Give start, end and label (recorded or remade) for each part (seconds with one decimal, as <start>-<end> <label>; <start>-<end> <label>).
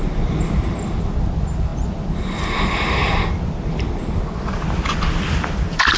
0.0-6.0 recorded